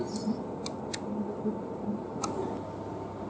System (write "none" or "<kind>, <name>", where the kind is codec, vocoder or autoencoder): none